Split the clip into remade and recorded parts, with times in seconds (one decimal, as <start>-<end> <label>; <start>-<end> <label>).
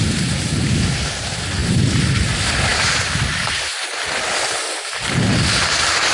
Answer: 0.0-6.1 recorded